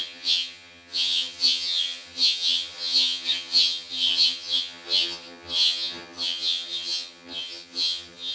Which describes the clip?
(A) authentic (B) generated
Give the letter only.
B